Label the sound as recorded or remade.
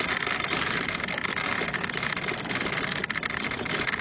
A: recorded